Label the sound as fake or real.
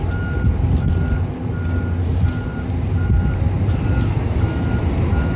real